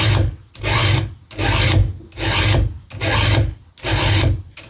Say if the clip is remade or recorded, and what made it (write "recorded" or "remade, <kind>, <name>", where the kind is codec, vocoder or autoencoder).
recorded